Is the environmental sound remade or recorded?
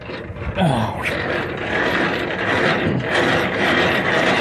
remade